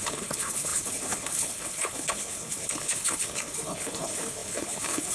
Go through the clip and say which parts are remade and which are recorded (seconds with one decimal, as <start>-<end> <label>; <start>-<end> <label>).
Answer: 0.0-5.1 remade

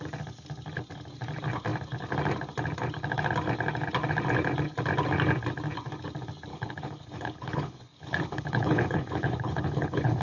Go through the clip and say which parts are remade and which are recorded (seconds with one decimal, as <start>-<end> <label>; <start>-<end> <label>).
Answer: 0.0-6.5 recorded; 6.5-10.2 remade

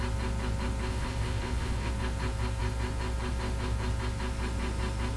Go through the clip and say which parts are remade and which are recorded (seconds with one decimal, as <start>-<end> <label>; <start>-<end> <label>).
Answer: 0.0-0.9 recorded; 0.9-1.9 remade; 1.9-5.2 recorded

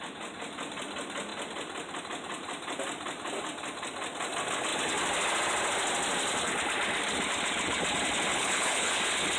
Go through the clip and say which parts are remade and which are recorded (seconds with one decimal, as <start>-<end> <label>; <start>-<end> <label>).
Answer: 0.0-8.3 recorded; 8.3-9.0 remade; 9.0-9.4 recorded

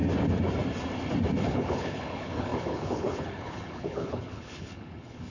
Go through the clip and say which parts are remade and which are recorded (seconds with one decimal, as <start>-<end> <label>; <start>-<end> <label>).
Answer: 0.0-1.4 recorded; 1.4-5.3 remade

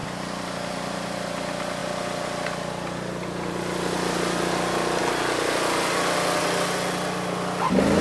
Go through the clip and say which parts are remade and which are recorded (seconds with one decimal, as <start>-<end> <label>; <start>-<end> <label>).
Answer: 0.0-8.0 recorded

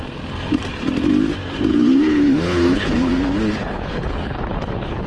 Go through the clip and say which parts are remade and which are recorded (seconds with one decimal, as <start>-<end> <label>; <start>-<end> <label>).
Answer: 0.0-1.7 recorded; 1.7-3.1 remade; 3.1-3.6 recorded; 3.6-5.1 remade

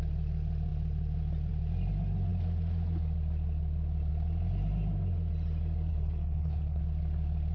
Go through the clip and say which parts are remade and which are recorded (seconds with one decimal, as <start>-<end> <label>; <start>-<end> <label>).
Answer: 0.0-5.9 recorded; 5.9-6.8 remade; 6.8-7.5 recorded